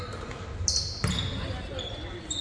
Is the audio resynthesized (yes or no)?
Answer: no